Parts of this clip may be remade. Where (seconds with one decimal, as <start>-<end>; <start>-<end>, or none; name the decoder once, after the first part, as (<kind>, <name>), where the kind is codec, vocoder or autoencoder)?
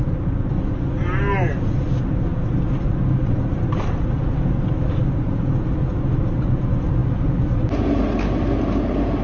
none